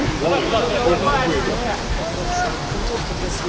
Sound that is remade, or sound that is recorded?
recorded